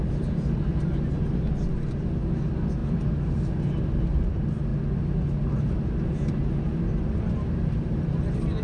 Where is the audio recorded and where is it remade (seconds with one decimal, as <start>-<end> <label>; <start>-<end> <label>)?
0.0-8.6 recorded